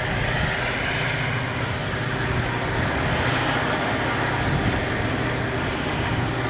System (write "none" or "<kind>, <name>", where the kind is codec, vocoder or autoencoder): none